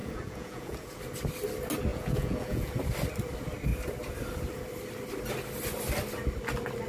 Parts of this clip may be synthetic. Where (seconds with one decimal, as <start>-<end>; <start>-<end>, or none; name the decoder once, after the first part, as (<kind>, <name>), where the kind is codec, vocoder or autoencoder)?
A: 0.0-1.0 (vocoder, Vocos); 1.9-2.8